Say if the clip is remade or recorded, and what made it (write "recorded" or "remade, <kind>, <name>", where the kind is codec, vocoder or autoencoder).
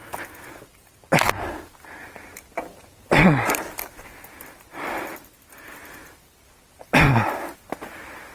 recorded